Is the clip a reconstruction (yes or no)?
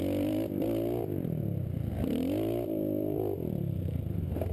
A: yes